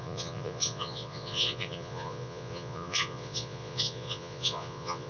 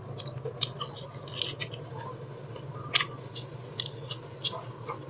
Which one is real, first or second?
second